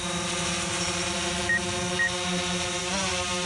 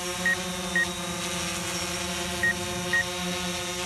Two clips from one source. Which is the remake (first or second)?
first